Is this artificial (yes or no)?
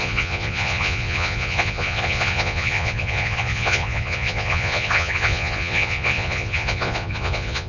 yes